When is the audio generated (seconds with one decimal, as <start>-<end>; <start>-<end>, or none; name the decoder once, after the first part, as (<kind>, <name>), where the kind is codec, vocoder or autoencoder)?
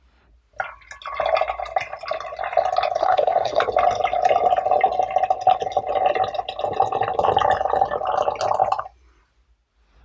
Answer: 3.0-3.6 (codec, SNAC)